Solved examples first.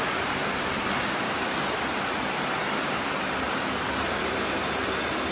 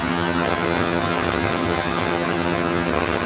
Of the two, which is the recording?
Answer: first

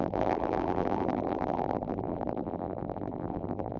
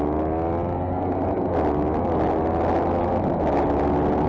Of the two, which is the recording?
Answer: second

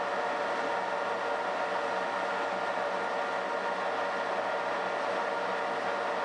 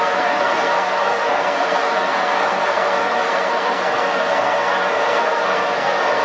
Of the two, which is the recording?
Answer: first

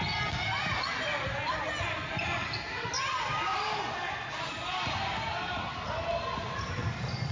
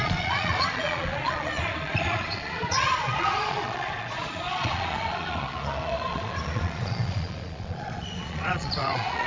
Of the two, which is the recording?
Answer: first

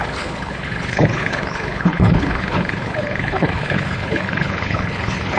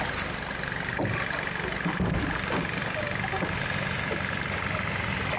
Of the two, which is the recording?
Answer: second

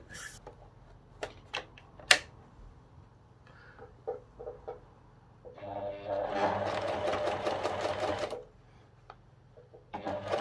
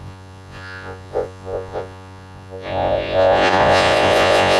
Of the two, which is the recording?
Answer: first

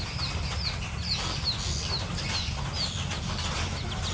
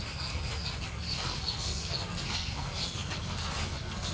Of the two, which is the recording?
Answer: first